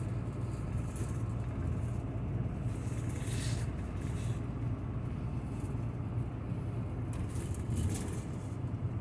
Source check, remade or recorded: recorded